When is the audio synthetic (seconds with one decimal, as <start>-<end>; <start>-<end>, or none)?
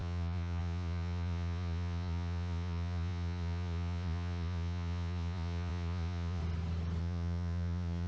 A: 0.0-6.4; 7.0-8.1